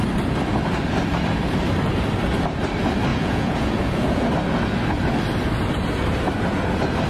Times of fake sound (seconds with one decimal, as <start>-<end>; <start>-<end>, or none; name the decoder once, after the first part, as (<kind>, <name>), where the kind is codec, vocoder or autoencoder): 3.1-4.3 (vocoder, Vocos)